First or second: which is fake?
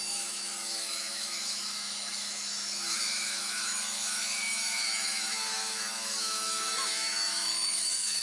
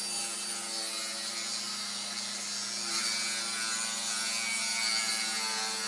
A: first